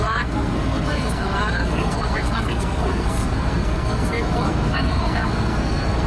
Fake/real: fake